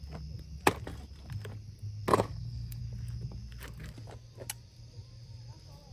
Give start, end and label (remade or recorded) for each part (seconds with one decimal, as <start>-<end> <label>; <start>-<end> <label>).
0.0-2.1 recorded; 2.1-2.8 remade; 2.8-5.9 recorded